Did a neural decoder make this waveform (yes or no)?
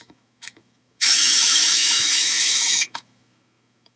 yes